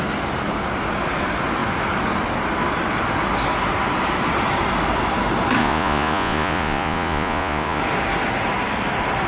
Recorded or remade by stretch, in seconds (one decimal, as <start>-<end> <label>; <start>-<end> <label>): 0.0-5.6 recorded; 5.6-7.8 remade; 7.8-9.3 recorded